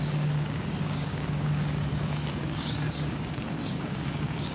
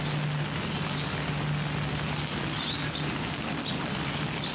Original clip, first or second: second